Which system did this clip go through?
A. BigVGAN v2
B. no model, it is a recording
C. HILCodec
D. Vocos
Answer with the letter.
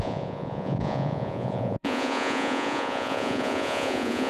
D